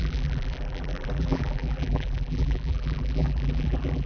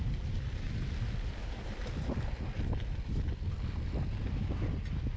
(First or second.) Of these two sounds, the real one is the second